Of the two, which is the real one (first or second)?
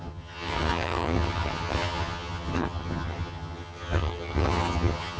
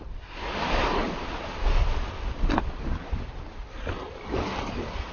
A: second